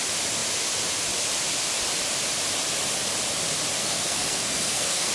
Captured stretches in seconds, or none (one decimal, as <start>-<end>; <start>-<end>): 0.0-3.8